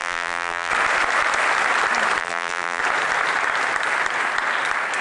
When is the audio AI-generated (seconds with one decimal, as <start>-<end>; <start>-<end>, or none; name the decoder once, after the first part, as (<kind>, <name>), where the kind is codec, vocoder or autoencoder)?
0.0-0.7 (vocoder, BigVGAN v2); 2.2-2.8